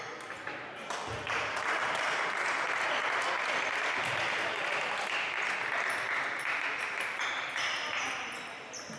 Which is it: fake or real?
real